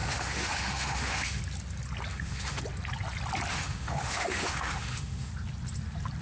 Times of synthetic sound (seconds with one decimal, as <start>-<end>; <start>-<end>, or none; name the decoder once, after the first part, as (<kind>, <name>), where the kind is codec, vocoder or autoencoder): 0.0-1.4 (autoencoder, DAC-VAE); 2.1-2.6; 3.5-5.3